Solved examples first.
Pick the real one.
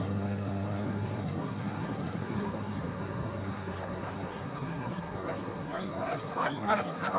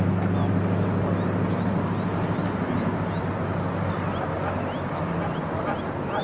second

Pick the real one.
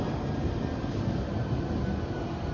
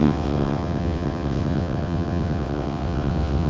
first